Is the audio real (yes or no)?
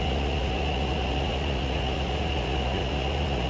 no